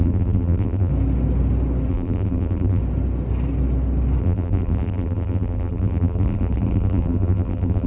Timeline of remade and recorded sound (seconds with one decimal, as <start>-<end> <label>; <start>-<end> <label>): 0.0-0.9 remade; 0.9-1.9 recorded; 1.9-2.8 remade; 2.8-4.2 recorded; 4.2-7.9 remade